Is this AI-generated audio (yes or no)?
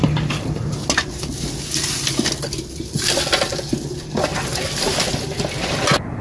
no